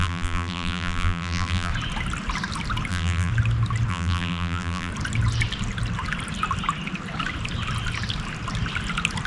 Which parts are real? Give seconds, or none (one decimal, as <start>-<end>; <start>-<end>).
1.7-2.9; 3.3-3.9; 4.9-9.3